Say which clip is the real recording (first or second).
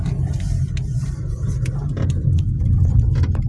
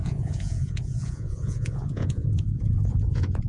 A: first